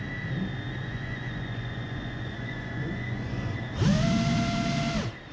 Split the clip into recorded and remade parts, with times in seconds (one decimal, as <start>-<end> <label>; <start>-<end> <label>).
0.0-0.8 recorded; 0.8-3.5 remade; 3.5-5.3 recorded